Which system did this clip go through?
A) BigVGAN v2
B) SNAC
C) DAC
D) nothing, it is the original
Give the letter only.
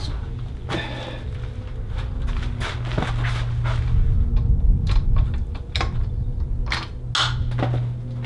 D